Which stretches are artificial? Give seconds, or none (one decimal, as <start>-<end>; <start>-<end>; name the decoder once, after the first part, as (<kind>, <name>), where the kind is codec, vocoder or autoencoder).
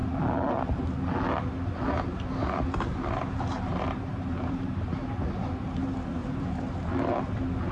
3.7-4.8 (vocoder, BigVGAN v2); 6.2-6.9